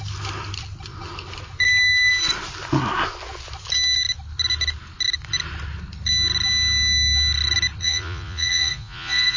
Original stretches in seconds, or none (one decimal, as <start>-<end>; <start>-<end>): 0.0-7.8